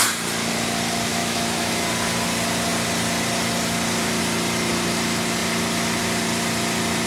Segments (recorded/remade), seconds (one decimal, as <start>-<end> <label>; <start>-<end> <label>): 0.0-1.1 recorded; 1.1-1.7 remade; 1.7-7.1 recorded